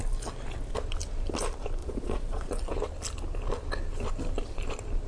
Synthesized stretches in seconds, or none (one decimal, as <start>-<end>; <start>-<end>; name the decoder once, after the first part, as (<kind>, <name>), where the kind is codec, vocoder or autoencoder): 1.8-2.5 (vocoder, Vocos)